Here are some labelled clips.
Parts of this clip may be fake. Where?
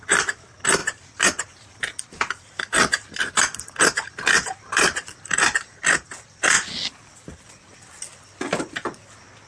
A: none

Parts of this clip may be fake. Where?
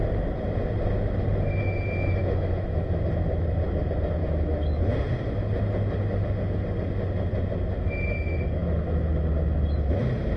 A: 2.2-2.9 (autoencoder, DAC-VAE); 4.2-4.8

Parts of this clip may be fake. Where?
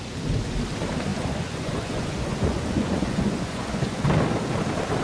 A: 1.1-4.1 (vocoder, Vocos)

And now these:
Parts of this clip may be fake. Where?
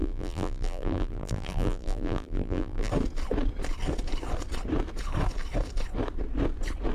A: 0.0-2.9 (vocoder, BigVGAN v2)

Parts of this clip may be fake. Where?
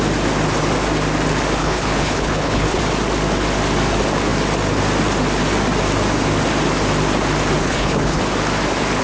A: 1.6-2.8 (codec, HILCodec); 7.6-8.2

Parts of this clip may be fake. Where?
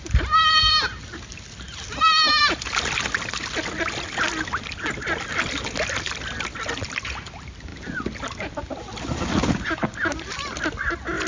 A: none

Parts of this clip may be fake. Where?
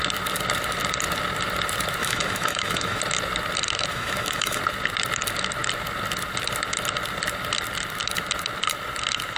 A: 2.0-3.0 (autoencoder, DAC-VAE); 3.9-4.6